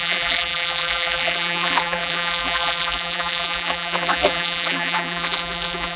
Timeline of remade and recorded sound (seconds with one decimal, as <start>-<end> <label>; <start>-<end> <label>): 0.0-6.0 remade